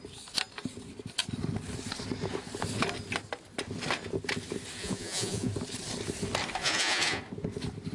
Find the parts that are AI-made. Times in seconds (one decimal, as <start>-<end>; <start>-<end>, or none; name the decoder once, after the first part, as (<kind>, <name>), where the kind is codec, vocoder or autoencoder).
4.8-5.5 (vocoder, Vocos); 6.6-7.2